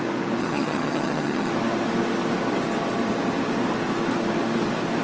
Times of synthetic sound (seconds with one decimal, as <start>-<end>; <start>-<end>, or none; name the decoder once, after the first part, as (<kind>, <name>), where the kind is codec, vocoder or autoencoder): 0.4-1.5 (vocoder, HiFi-GAN)